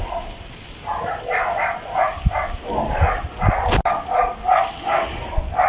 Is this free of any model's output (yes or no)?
yes